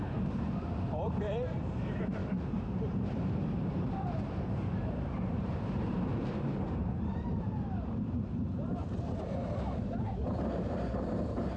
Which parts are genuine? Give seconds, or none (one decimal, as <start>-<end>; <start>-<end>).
8.8-9.4